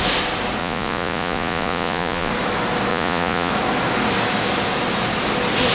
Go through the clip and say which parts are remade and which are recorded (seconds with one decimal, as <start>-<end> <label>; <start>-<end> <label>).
0.0-0.6 recorded; 0.6-2.3 remade; 2.3-2.9 recorded; 2.9-3.5 remade; 3.5-5.7 recorded